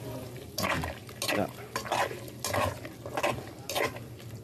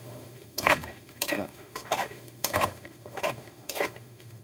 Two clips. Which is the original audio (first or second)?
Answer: first